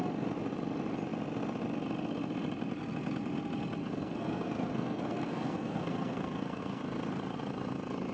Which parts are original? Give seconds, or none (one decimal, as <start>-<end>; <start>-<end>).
0.0-3.8; 6.8-8.1